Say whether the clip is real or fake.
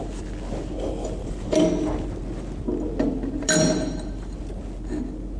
real